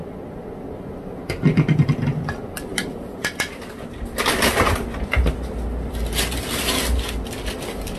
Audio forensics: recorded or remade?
recorded